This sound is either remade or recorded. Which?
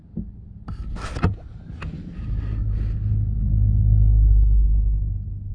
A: recorded